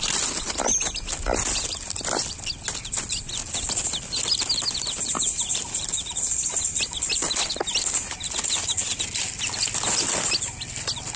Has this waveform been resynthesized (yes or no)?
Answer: no